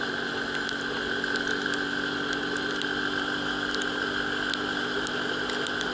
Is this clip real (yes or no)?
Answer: yes